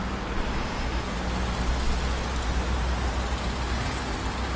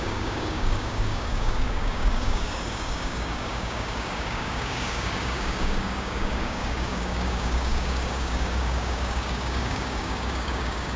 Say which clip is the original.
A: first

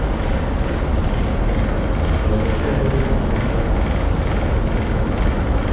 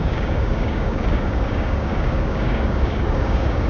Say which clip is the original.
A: first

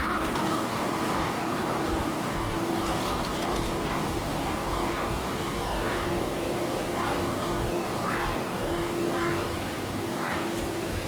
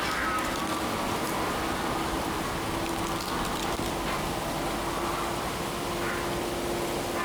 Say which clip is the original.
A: second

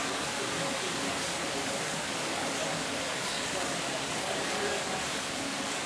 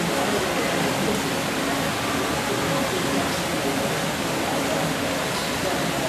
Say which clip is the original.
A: second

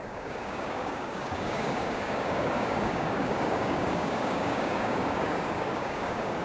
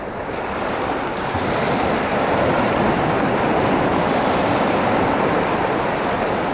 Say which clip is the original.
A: second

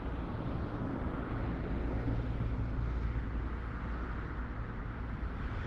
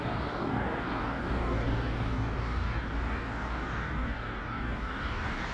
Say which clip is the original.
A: first